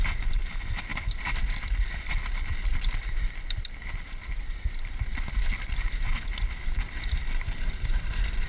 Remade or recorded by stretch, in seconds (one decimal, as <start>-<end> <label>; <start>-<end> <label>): 0.0-0.9 recorded; 0.9-5.9 remade; 5.9-8.5 recorded